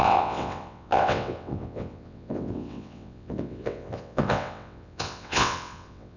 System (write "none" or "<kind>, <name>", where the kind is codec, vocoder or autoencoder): vocoder, WaveNeXt